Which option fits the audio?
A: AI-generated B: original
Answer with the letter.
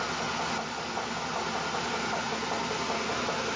B